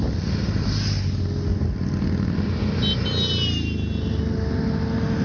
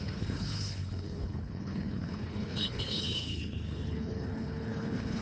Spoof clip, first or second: second